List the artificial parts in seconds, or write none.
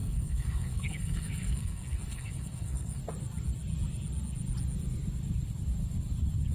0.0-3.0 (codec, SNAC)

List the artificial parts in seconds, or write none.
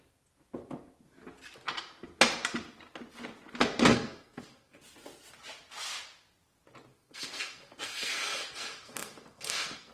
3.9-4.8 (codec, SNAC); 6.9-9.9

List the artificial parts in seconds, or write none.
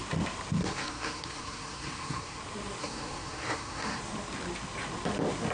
0.6-2.4 (codec, SNAC); 2.8-4.0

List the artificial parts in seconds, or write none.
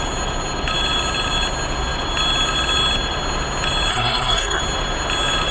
3.9-4.6 (codec, SNAC)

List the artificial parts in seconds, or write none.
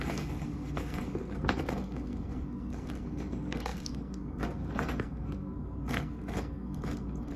0.0-7.4 (codec, SNAC)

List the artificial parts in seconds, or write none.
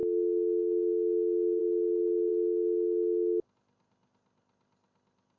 0.0-1.6 (codec, SNAC)